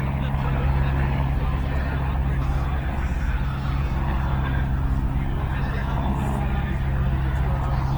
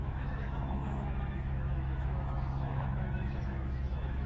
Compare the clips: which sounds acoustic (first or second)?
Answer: first